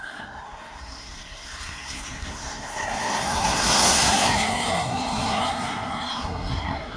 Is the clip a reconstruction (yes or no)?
yes